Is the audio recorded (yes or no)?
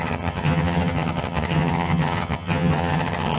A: no